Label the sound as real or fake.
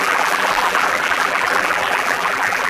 fake